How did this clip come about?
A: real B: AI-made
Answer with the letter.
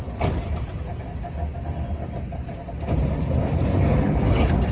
A